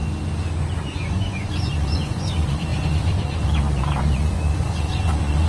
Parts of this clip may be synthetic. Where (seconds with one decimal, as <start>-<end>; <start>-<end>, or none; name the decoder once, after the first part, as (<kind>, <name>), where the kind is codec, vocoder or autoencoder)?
0.7-5.5 (vocoder, Vocos)